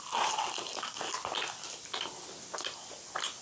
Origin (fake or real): real